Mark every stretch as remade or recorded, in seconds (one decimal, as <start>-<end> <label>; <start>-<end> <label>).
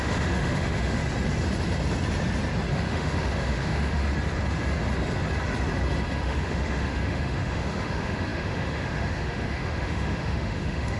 0.0-1.0 remade; 1.0-2.7 recorded; 2.7-4.0 remade; 4.0-6.2 recorded; 6.2-11.0 remade